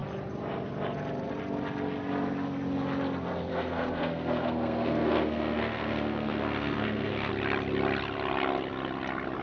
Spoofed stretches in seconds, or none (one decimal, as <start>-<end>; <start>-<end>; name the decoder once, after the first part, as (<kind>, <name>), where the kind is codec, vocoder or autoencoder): 3.5-7.3 (codec, SNAC)